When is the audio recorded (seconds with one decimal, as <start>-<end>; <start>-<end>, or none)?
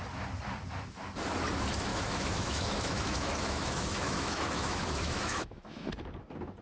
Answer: 0.0-1.9; 5.9-6.6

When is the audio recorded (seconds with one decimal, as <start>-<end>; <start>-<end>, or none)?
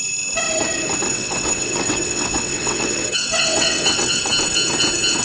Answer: 0.0-1.1; 4.2-5.2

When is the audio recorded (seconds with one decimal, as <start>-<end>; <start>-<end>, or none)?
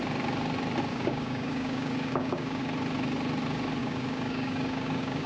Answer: 0.0-0.9; 2.6-3.8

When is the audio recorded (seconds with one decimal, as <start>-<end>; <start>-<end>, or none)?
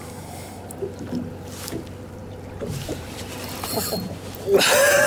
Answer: 0.0-2.2; 4.0-5.1